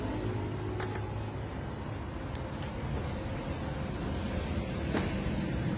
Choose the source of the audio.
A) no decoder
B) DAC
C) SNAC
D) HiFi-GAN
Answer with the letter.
A